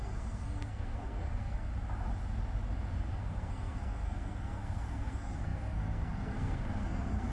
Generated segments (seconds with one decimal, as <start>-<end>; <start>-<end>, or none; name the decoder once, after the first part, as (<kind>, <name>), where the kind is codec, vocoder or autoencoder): 0.0-1.7 (codec, SNAC); 3.1-7.3